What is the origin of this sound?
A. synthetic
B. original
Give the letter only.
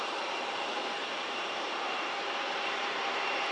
A